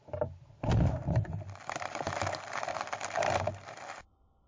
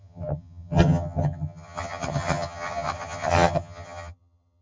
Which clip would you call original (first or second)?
first